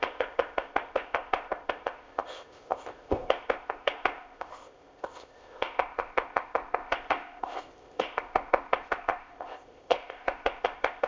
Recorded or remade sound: remade